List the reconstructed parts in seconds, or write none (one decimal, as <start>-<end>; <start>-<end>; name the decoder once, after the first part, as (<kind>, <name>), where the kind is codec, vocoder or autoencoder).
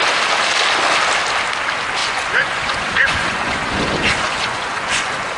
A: 2.0-5.4 (vocoder, Vocos)